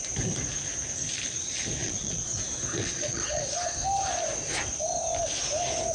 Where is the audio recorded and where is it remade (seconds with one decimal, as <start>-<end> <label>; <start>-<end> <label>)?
0.0-1.8 recorded; 1.8-2.4 remade; 2.4-2.8 recorded; 2.8-3.5 remade; 3.5-5.9 recorded